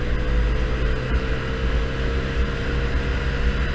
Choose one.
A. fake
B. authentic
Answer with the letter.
B